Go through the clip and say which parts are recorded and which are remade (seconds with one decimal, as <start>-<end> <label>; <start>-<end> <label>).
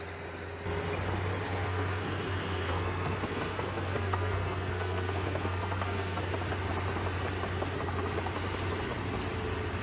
0.0-1.5 recorded; 1.5-6.2 remade; 6.2-9.8 recorded